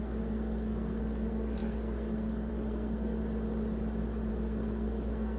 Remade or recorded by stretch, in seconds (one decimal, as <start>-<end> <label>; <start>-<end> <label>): 0.0-3.2 remade; 3.2-4.3 recorded; 4.3-5.4 remade